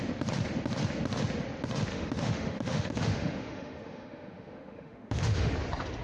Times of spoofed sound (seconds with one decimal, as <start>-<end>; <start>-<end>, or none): 1.9-5.5